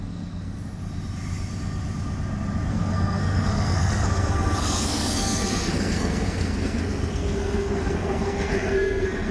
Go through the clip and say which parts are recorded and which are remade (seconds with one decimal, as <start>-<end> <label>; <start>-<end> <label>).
0.0-0.8 remade; 0.8-2.7 recorded; 2.7-9.3 remade

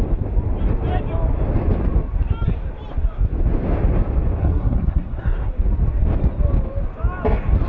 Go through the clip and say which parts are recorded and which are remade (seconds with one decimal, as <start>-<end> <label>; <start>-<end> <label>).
0.0-4.4 recorded; 4.4-5.5 remade; 5.5-7.7 recorded

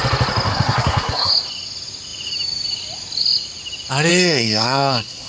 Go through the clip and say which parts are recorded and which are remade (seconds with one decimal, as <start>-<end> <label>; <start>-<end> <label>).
0.0-0.5 recorded; 0.5-1.3 remade; 1.3-4.1 recorded; 4.1-5.3 remade

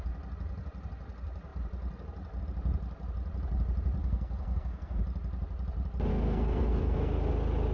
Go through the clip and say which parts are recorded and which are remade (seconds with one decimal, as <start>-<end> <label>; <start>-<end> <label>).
0.0-4.0 recorded; 4.0-5.0 remade; 5.0-6.1 recorded; 6.1-7.3 remade; 7.3-7.7 recorded

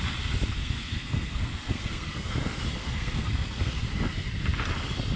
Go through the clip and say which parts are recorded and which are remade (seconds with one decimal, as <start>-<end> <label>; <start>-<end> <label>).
0.0-0.6 recorded; 0.6-2.3 remade; 2.3-2.8 recorded; 2.8-3.8 remade; 3.8-5.2 recorded

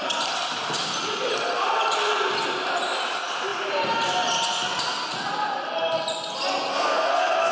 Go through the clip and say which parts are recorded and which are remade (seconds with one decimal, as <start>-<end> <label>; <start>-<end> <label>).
0.0-6.7 recorded; 6.7-7.5 remade

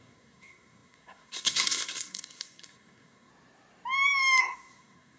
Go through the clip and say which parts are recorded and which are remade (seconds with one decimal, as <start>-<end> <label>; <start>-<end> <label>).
0.0-3.3 remade; 3.3-4.4 recorded; 4.4-5.2 remade

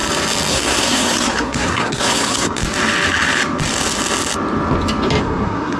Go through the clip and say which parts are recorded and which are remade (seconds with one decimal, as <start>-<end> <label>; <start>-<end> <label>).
0.0-0.5 recorded; 0.5-2.6 remade; 2.6-5.2 recorded; 5.2-5.8 remade